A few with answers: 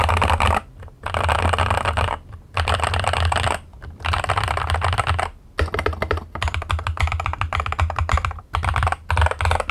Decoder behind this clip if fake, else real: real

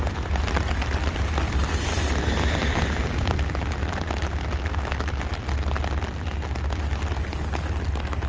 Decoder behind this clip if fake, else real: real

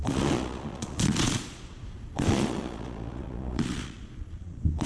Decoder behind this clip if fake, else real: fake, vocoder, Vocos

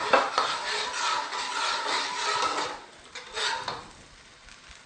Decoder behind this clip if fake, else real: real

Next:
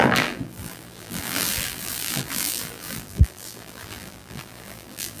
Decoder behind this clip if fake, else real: fake, vocoder, BigVGAN v2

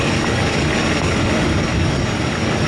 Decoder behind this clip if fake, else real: fake, codec, DAC